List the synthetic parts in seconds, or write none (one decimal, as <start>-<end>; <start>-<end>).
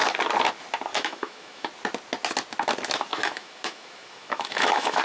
0.9-1.7; 3.1-5.0